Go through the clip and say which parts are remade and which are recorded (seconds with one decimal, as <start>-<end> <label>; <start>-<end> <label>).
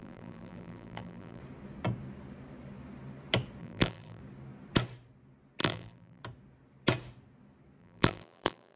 0.0-1.4 remade; 1.4-3.6 recorded; 3.6-4.2 remade; 4.2-5.6 recorded; 5.6-6.2 remade; 6.2-7.8 recorded; 7.8-8.8 remade